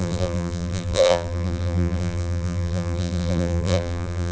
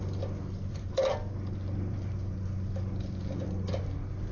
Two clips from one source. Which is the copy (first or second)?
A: first